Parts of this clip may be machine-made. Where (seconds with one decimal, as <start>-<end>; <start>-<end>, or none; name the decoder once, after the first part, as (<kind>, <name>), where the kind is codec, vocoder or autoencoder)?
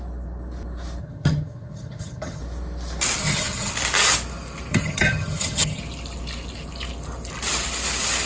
1.0-2.4 (vocoder, HiFi-GAN); 3.2-3.7; 4.7-5.8